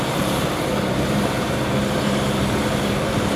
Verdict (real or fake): fake